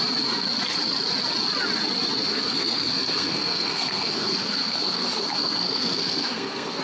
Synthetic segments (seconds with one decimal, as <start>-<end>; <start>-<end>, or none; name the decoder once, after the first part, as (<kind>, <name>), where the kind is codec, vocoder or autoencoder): 2.3-6.8 (codec, SNAC)